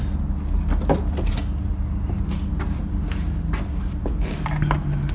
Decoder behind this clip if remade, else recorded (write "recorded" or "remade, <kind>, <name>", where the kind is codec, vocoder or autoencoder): recorded